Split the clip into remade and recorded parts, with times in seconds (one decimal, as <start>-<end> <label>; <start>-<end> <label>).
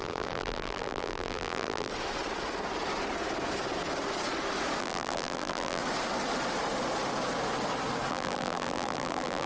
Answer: 0.0-1.9 remade; 1.9-4.8 recorded; 4.8-5.8 remade; 5.8-8.1 recorded; 8.1-9.5 remade